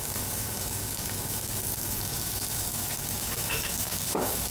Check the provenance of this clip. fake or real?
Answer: fake